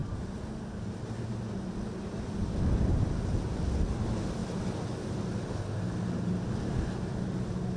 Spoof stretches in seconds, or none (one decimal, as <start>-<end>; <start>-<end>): none